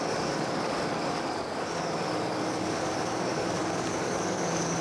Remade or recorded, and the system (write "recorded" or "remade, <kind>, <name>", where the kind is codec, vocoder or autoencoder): remade, codec, DAC